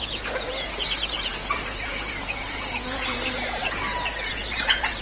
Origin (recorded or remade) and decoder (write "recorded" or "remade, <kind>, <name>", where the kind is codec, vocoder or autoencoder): remade, vocoder, Vocos